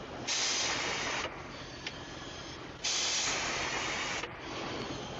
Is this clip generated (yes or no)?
no